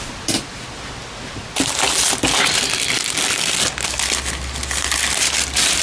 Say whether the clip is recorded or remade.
recorded